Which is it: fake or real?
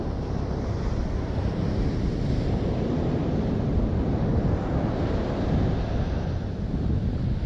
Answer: real